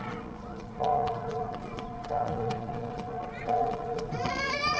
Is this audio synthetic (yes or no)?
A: yes